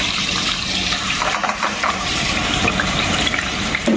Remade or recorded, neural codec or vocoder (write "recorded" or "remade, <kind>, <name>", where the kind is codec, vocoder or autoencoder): remade, vocoder, BigVGAN v2